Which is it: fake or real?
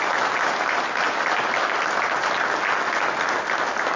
real